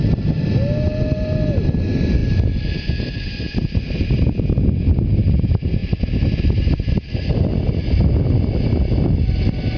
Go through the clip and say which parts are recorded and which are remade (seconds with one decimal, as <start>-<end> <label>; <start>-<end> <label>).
0.0-9.8 recorded